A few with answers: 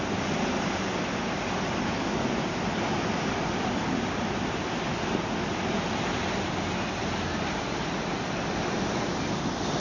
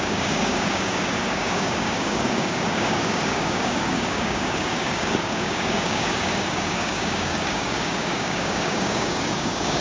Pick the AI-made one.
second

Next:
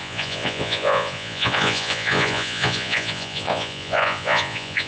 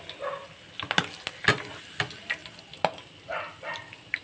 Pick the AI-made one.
first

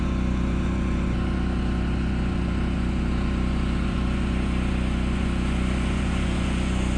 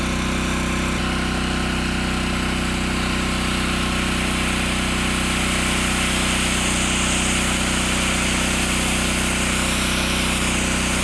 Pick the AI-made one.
first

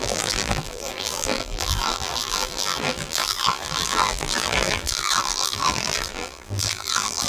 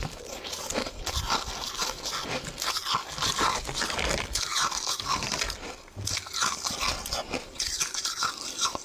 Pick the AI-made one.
first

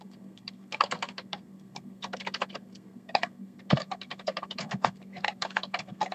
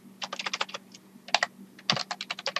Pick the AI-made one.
first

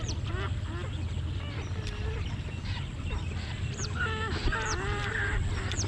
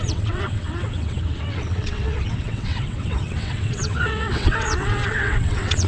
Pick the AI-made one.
second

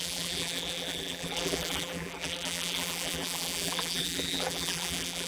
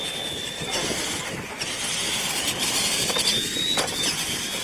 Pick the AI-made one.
first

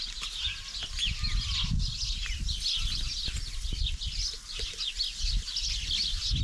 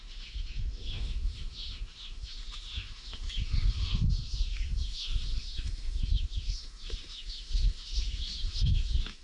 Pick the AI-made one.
second